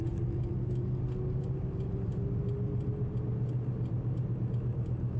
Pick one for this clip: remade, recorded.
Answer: recorded